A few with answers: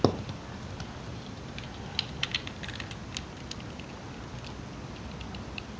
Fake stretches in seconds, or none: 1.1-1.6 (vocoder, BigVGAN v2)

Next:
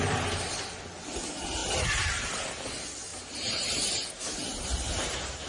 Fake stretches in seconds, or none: 1.6-2.3 (vocoder, BigVGAN v2); 3.1-5.5